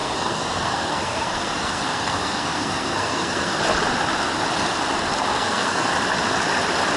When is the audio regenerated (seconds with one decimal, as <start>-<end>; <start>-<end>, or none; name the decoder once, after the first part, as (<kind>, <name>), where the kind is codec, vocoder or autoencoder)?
0.0-3.6 (codec, SNAC); 5.3-5.9